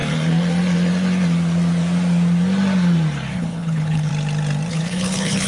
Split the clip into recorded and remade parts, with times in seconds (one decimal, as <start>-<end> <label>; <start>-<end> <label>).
0.0-3.3 recorded; 3.3-4.1 remade; 4.1-4.7 recorded; 4.7-5.5 remade